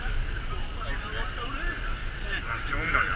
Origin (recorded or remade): recorded